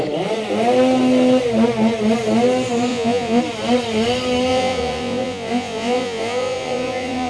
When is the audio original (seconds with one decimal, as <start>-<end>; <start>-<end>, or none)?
0.0-2.9; 3.4-4.5